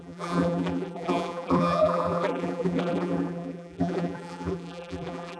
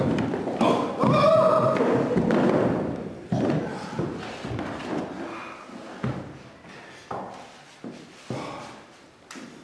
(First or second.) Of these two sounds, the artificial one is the first